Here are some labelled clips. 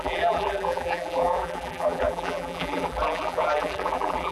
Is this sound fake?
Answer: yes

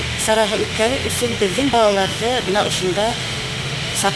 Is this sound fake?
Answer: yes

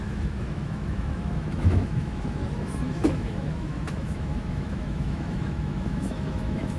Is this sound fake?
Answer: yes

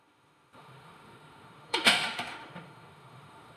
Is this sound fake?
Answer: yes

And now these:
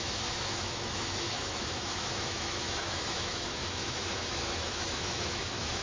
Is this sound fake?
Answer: yes